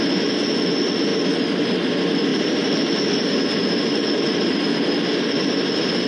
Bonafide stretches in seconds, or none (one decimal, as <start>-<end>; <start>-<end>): 0.0-1.1; 1.7-2.3; 2.9-6.1